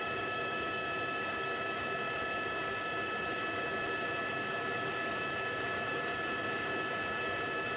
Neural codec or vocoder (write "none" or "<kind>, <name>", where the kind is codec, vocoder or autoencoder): autoencoder, DAC-VAE